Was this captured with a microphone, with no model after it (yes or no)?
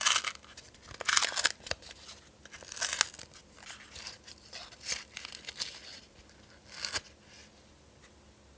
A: yes